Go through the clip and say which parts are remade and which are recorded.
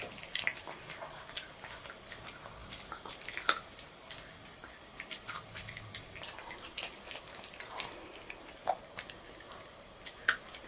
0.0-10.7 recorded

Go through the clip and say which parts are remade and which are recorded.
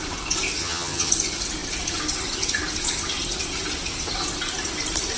0.0-0.6 recorded; 0.6-1.1 remade; 1.1-5.2 recorded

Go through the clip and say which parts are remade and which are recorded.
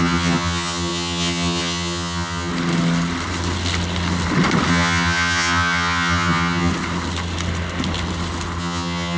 0.0-2.5 remade; 2.5-4.7 recorded; 4.7-6.7 remade; 6.7-8.6 recorded; 8.6-9.2 remade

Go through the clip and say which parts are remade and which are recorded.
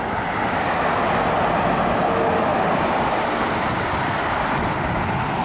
0.0-2.5 recorded; 2.5-3.2 remade; 3.2-5.4 recorded